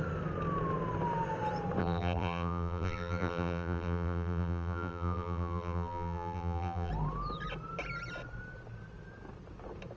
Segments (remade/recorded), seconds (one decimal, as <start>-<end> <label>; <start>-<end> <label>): 0.0-1.8 recorded; 1.8-6.9 remade; 6.9-10.0 recorded